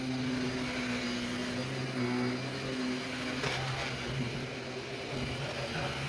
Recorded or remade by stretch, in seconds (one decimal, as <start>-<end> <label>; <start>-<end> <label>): 0.0-6.1 recorded

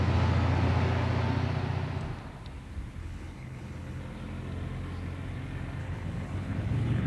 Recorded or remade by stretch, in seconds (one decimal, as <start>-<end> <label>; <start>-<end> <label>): 0.0-3.0 recorded; 3.0-4.0 remade; 4.0-5.8 recorded; 5.8-7.1 remade